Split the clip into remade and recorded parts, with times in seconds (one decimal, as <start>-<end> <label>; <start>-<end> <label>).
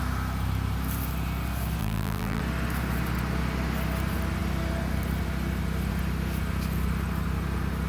0.0-1.8 recorded; 1.8-2.4 remade; 2.4-7.9 recorded